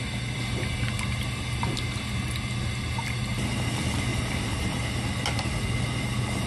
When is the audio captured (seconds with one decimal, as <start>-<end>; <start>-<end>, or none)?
0.0-4.1; 4.9-6.5